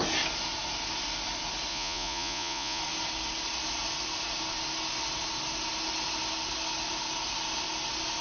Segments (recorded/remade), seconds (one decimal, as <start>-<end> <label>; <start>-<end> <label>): 0.0-1.7 recorded; 1.7-2.8 remade; 2.8-8.2 recorded

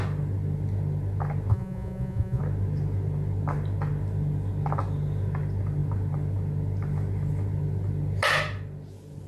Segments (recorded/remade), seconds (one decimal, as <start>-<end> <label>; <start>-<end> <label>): 0.0-1.5 recorded; 1.5-2.4 remade; 2.4-9.3 recorded

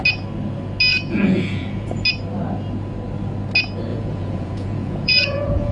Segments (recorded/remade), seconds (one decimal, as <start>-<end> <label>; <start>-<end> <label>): 0.0-0.9 recorded; 0.9-1.9 remade; 1.9-3.9 recorded; 3.9-5.7 remade